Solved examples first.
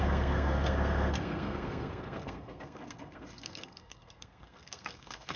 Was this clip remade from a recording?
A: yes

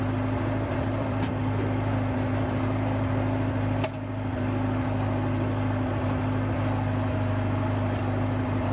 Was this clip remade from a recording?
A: yes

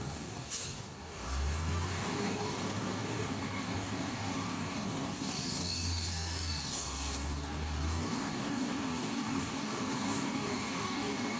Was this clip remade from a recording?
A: yes